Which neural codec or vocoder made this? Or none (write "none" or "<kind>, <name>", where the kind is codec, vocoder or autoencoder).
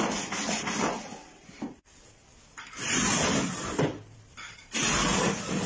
none